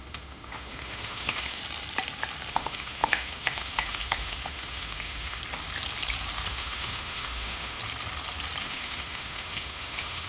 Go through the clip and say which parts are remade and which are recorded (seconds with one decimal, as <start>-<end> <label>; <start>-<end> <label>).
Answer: 0.0-1.6 remade; 1.6-2.5 recorded; 2.5-5.4 remade; 5.4-6.5 recorded; 6.5-7.8 remade; 7.8-8.6 recorded; 8.6-10.3 remade